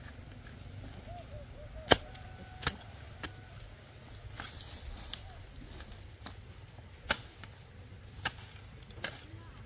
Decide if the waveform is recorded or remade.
recorded